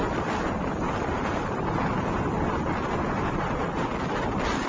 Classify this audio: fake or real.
real